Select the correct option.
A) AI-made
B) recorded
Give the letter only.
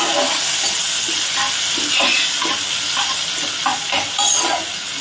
B